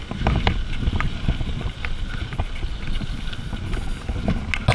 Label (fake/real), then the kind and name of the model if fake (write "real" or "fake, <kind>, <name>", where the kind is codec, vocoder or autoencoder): real